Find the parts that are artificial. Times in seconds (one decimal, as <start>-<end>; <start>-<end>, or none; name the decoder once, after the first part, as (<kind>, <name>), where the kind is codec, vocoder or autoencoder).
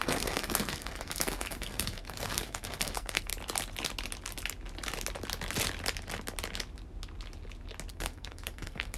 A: 0.0-3.3 (codec, SNAC); 7.9-9.0